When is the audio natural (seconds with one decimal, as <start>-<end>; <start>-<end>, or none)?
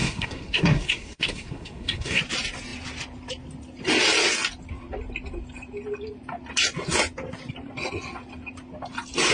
2.2-9.3